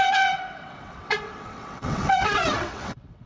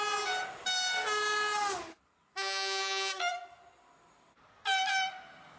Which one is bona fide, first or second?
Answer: second